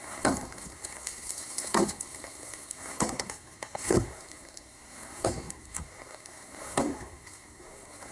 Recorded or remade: remade